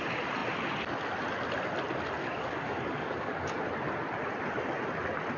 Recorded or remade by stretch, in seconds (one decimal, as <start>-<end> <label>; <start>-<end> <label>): 0.0-2.2 recorded; 2.2-3.6 remade; 3.6-5.4 recorded